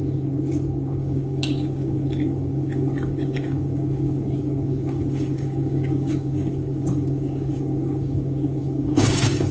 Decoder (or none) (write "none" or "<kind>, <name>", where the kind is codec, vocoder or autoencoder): codec, DAC